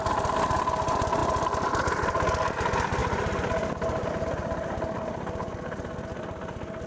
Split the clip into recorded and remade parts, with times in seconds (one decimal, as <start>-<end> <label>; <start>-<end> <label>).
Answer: 0.0-6.9 recorded